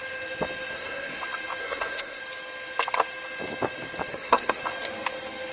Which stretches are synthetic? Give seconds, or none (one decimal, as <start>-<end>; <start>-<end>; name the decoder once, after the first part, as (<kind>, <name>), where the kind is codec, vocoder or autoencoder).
0.7-1.2 (codec, SNAC); 1.6-2.2; 4.1-4.6